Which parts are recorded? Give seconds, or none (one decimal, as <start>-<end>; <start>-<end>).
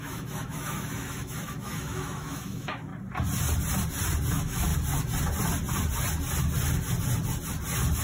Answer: 2.9-4.3; 4.7-8.0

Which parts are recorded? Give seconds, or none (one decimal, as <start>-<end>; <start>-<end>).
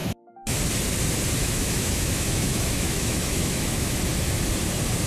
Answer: 0.6-1.4; 4.0-5.1